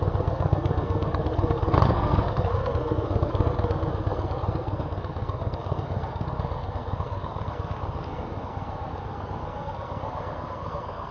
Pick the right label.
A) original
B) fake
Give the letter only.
B